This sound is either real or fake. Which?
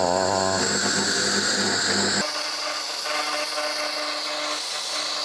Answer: real